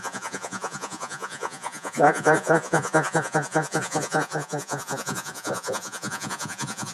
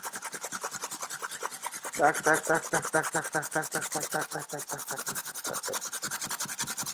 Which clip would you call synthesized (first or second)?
first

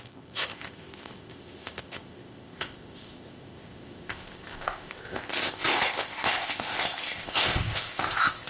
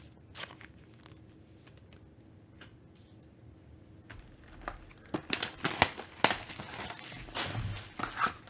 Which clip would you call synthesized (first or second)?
first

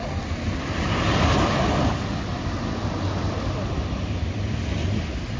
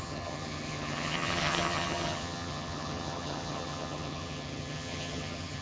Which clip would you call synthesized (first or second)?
second